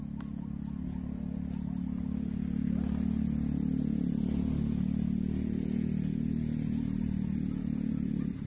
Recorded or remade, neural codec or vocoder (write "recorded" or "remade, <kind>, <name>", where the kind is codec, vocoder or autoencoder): recorded